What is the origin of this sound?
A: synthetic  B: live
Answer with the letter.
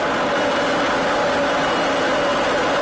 B